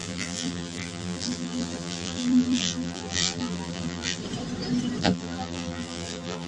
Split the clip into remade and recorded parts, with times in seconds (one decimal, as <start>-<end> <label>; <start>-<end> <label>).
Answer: 0.0-4.2 remade; 4.2-5.0 recorded; 5.0-6.5 remade